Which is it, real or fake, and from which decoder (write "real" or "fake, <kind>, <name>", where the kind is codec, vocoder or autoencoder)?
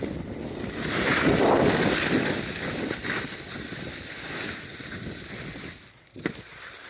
real